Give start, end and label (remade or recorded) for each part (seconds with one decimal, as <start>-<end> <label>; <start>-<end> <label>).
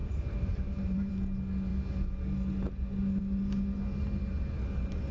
0.0-1.1 remade; 1.1-5.1 recorded